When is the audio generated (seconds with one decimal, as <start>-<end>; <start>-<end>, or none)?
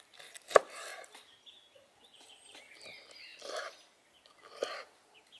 0.9-2.6